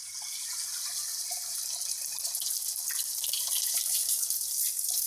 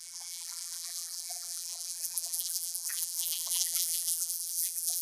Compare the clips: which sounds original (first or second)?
first